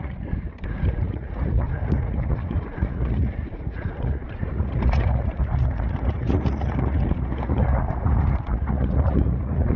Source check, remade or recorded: remade